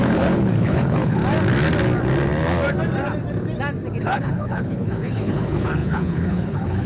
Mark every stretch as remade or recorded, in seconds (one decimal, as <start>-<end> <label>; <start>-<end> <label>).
0.0-1.2 remade; 1.2-4.0 recorded; 4.0-6.9 remade